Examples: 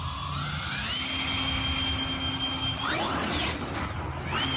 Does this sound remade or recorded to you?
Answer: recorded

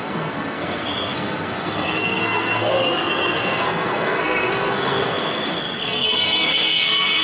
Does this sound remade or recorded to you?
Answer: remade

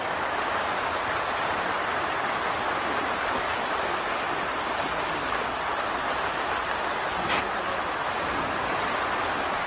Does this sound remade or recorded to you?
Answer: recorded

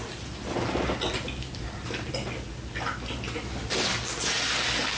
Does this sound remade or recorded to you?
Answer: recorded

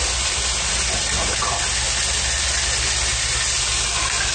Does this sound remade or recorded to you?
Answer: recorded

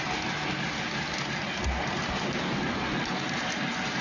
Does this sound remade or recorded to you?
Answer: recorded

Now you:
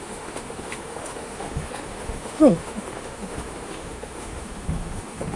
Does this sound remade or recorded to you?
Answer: remade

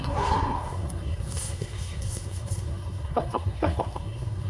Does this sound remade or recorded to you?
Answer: remade